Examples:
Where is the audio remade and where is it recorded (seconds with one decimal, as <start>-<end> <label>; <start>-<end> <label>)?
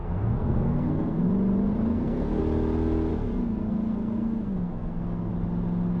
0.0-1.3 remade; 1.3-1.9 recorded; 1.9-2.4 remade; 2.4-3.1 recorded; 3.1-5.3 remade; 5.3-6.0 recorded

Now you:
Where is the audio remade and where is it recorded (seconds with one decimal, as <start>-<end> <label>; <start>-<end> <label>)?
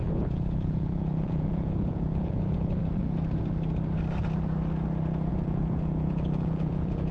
0.0-2.8 remade; 2.8-5.3 recorded; 5.3-7.1 remade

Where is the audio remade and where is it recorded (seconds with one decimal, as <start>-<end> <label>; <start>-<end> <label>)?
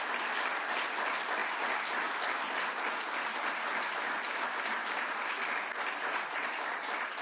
0.0-7.2 recorded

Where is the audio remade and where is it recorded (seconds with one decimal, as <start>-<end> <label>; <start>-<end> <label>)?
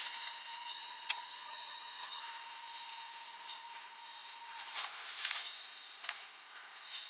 0.0-0.7 recorded; 0.7-2.2 remade; 2.2-7.1 recorded